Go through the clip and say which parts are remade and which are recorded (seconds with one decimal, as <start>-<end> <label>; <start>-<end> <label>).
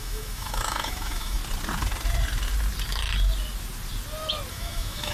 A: 0.0-1.4 remade; 1.4-4.5 recorded; 4.5-5.1 remade